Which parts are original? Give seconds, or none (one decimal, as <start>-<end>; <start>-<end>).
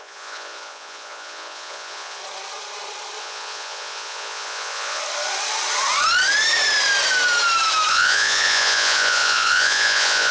2.2-3.2; 5.0-7.9